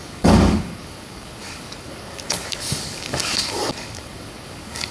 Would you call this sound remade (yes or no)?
yes